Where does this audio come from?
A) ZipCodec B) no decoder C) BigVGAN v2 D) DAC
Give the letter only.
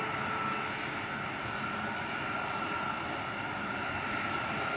B